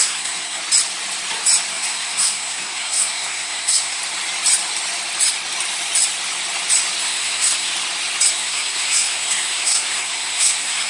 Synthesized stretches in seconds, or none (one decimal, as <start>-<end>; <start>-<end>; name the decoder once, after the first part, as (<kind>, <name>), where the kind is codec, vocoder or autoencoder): 0.0-0.6 (codec, SNAC); 1.7-4.0; 7.0-7.7; 8.3-10.9